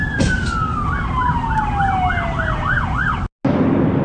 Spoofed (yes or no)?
no